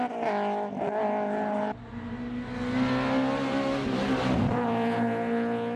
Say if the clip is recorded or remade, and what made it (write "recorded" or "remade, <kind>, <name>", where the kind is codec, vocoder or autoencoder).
recorded